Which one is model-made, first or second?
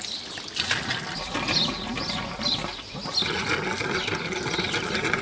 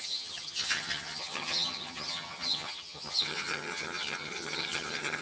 second